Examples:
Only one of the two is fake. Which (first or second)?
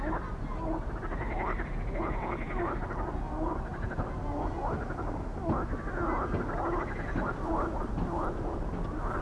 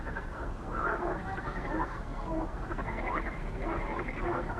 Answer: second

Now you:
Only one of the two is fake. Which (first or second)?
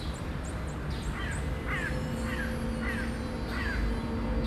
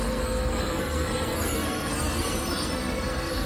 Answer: second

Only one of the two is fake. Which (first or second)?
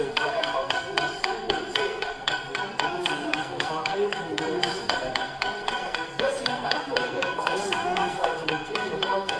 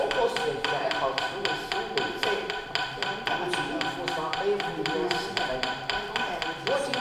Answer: first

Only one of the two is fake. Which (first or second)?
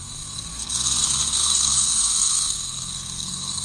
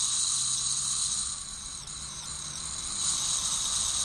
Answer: first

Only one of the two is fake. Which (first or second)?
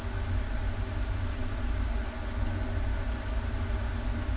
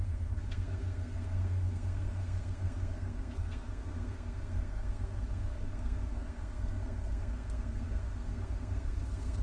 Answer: second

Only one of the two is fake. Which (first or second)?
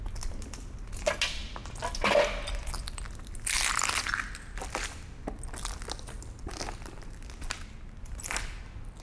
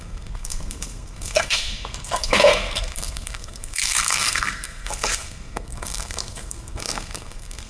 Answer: second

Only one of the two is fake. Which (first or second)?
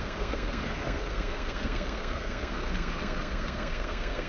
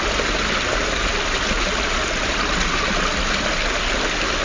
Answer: first